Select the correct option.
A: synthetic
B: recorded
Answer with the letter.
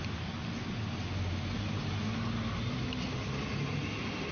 B